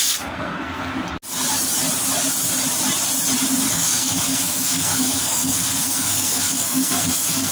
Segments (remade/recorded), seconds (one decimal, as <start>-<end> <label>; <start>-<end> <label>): 0.0-0.9 remade; 0.9-3.7 recorded; 3.7-7.5 remade